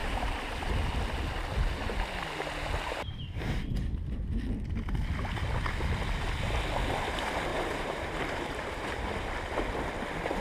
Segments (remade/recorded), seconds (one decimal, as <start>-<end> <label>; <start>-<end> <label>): 0.0-0.5 remade; 0.5-7.5 recorded; 7.5-9.4 remade; 9.4-10.4 recorded